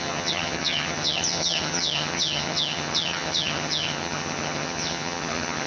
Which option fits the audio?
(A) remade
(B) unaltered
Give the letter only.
A